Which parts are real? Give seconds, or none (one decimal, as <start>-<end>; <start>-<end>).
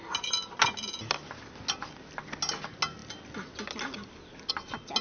0.0-5.0